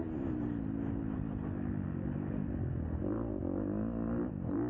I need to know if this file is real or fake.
real